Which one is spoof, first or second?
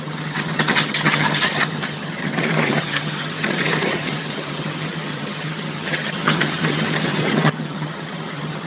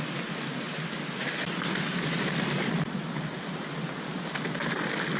first